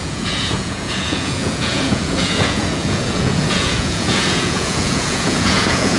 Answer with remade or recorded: remade